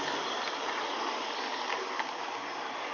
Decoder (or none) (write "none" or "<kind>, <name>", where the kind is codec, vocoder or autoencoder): none